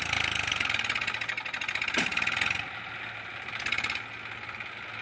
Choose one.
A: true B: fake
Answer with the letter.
A